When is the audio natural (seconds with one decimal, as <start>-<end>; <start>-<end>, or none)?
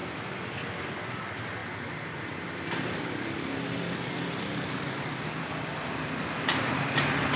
0.0-1.6; 5.9-7.4